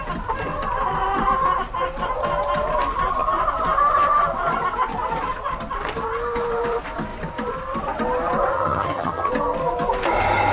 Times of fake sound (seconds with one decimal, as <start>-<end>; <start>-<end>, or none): 8.5-9.3